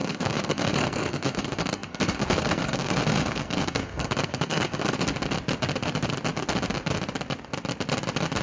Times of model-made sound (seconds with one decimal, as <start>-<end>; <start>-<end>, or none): 0.0-5.0